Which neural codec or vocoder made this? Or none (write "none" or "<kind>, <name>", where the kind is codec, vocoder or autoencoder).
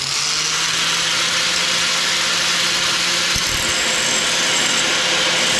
none